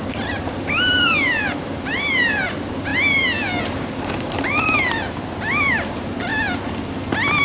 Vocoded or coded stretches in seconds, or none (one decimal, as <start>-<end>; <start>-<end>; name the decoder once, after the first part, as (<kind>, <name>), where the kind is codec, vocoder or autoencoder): 0.0-2.9 (vocoder, BigVGAN v2); 3.6-6.3